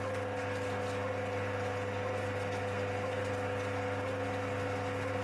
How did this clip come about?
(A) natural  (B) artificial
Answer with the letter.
A